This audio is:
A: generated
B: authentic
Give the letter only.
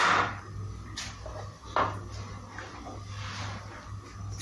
B